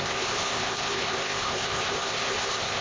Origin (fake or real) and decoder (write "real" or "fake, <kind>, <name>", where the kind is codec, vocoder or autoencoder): fake, codec, ZipCodec